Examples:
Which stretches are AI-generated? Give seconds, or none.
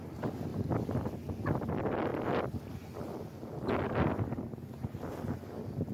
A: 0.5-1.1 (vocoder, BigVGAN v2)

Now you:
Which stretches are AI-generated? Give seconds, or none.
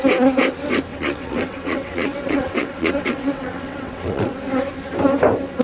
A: 0.9-4.3 (vocoder, WaveNeXt)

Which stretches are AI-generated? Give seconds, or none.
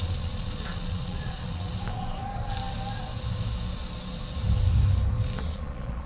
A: 0.0-1.7 (vocoder, Vocos); 5.4-6.1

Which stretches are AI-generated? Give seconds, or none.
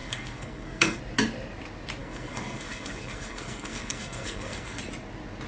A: 0.0-1.0 (codec, SNAC); 2.0-4.8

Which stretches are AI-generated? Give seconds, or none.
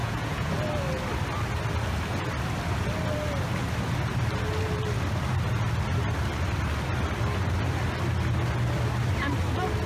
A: 0.0-0.5 (vocoder, Vocos)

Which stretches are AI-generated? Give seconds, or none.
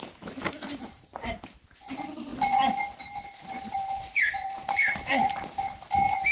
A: 0.0-2.3 (vocoder, BigVGAN v2); 3.0-5.2